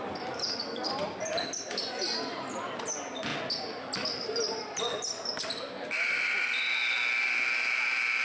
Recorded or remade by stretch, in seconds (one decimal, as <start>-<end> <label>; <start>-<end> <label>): 0.0-8.2 recorded

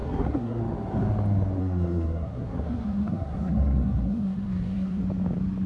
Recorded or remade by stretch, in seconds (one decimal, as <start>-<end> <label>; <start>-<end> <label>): 0.0-0.6 remade; 0.6-1.6 recorded; 1.6-5.0 remade; 5.0-5.7 recorded